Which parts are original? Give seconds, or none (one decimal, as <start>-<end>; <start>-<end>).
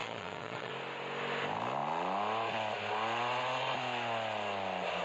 0.7-5.0